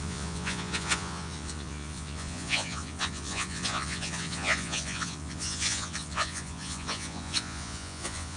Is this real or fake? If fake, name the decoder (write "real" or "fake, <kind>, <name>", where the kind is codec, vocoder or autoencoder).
fake, vocoder, Vocos